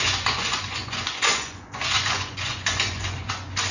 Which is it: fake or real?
fake